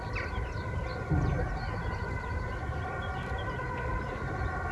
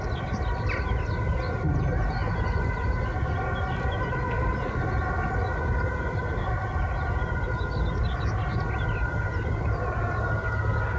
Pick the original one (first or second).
second